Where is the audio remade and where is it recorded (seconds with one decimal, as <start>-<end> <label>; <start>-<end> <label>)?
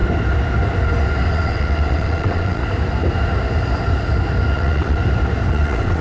0.0-1.3 recorded; 1.3-2.6 remade; 2.6-4.5 recorded; 4.5-5.0 remade; 5.0-5.5 recorded; 5.5-6.0 remade